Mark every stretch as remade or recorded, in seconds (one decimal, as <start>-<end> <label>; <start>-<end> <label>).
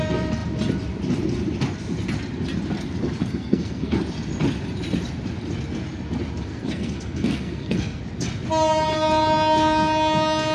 0.0-3.2 recorded; 3.2-4.0 remade; 4.0-6.5 recorded; 6.5-8.0 remade; 8.0-10.5 recorded